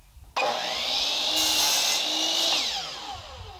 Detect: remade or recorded recorded